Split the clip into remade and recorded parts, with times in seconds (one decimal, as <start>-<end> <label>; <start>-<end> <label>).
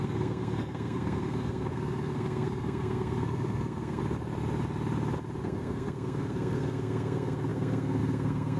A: 0.0-4.0 remade; 4.0-5.4 recorded; 5.4-8.6 remade